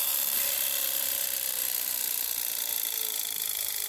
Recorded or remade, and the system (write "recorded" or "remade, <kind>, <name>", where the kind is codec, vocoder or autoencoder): remade, vocoder, BigVGAN v2